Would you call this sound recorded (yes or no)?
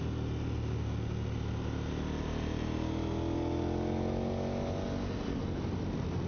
yes